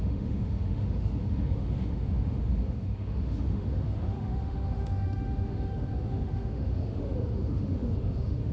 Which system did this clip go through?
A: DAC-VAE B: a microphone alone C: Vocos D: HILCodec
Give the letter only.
A